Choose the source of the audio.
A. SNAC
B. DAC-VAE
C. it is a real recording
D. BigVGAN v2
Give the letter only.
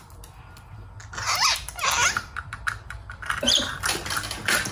C